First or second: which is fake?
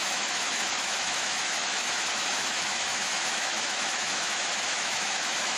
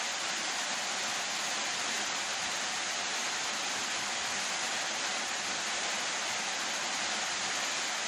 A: first